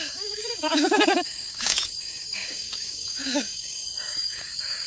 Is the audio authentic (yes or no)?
no